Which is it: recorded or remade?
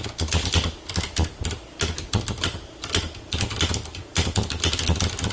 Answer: recorded